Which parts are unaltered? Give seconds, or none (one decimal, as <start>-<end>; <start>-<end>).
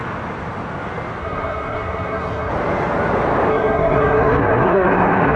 0.0-1.2; 2.5-3.5